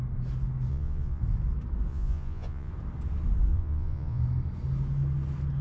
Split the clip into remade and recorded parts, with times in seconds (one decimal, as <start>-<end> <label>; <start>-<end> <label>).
0.0-0.7 recorded; 0.7-1.2 remade; 1.2-1.9 recorded; 1.9-2.7 remade; 2.7-3.5 recorded; 3.5-4.2 remade; 4.2-5.6 recorded